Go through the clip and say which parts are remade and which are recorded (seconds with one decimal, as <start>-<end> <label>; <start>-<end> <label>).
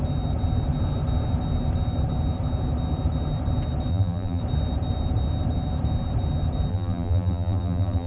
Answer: 0.0-3.9 recorded; 3.9-4.4 remade; 4.4-6.7 recorded; 6.7-8.1 remade